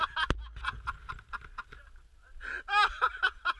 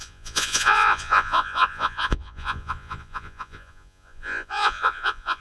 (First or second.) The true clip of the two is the first